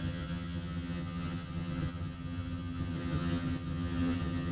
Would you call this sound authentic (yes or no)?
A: no